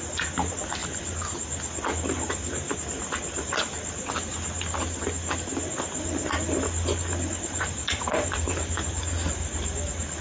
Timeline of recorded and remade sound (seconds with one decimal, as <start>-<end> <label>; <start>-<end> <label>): 0.0-10.2 recorded